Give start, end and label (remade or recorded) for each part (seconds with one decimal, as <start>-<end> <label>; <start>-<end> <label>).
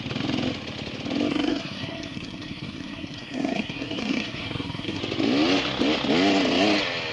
0.0-1.3 recorded; 1.3-5.0 remade; 5.0-7.1 recorded